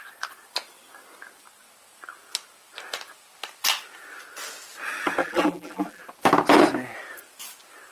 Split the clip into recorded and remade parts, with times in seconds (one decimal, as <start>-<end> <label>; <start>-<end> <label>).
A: 0.0-5.2 recorded; 5.2-6.0 remade; 6.0-7.9 recorded